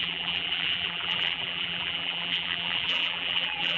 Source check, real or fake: fake